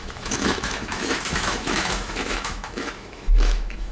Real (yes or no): no